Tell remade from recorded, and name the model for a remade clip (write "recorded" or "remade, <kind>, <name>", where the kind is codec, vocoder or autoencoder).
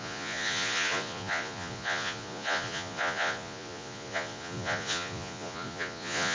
remade, vocoder, Vocos